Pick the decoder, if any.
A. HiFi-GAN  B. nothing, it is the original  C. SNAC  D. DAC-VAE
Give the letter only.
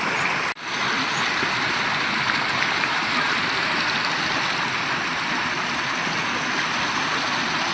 B